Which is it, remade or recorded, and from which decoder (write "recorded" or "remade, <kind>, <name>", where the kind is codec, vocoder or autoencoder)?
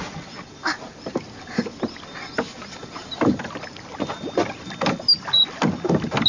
recorded